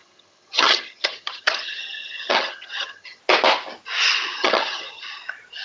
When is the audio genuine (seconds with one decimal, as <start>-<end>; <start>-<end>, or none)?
3.2-4.4; 5.0-5.6